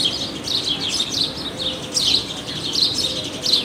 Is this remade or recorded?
recorded